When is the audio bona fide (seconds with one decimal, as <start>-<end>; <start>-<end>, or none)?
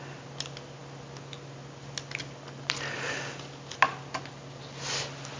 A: 0.0-5.4